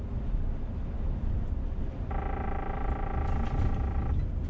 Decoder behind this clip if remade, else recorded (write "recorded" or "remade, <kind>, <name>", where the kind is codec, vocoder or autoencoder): recorded